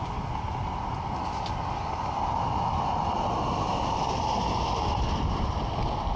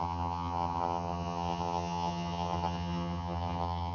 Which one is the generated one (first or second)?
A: second